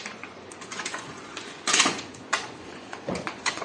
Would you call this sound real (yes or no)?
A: no